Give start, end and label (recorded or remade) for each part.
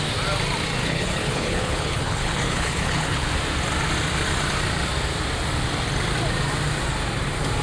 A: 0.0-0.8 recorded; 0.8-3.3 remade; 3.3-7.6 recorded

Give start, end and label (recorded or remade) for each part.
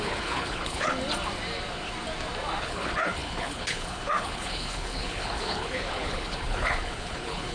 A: 0.0-0.9 remade; 0.9-2.6 recorded; 2.6-7.5 remade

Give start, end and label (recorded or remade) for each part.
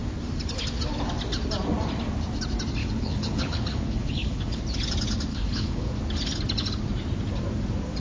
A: 0.0-2.8 recorded; 2.8-4.6 remade; 4.6-5.3 recorded; 5.3-5.9 remade; 5.9-8.0 recorded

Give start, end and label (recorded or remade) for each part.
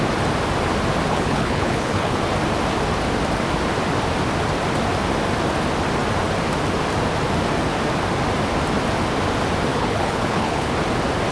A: 0.0-1.1 recorded; 1.1-2.2 remade; 2.2-9.7 recorded; 9.7-10.7 remade; 10.7-11.3 recorded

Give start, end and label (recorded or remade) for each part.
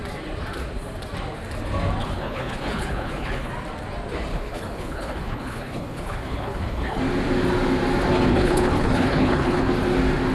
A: 0.0-2.0 recorded; 2.0-3.5 remade; 3.5-4.3 recorded; 4.3-7.0 remade; 7.0-8.3 recorded; 8.3-9.7 remade; 9.7-10.3 recorded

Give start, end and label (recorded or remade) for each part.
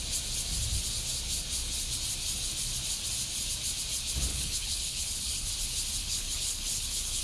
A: 0.0-4.3 recorded; 4.3-5.5 remade; 5.5-6.0 recorded; 6.0-7.2 remade